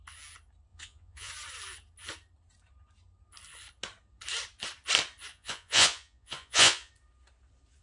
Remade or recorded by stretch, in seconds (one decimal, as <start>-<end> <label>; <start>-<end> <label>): 0.0-0.7 recorded; 0.7-1.3 remade; 1.3-5.3 recorded; 5.3-6.9 remade; 6.9-7.8 recorded